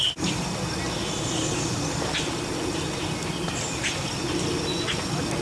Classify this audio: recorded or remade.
recorded